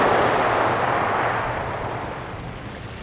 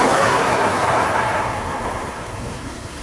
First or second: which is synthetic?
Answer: second